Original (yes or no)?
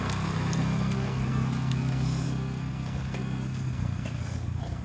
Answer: no